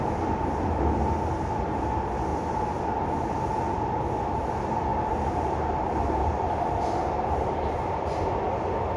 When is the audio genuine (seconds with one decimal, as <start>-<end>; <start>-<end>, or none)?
0.0-2.3; 2.8-4.9; 8.4-9.0